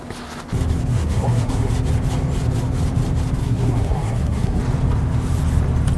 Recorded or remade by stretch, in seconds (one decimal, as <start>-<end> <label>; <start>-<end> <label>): 0.0-0.9 recorded; 0.9-1.7 remade; 1.7-3.4 recorded; 3.4-4.6 remade; 4.6-6.0 recorded